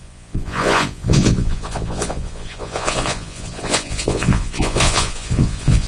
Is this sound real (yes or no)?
no